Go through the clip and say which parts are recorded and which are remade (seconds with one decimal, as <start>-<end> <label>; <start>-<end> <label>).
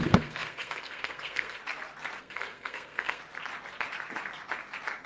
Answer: 0.0-1.6 remade; 1.6-2.2 recorded; 2.2-3.2 remade; 3.2-5.1 recorded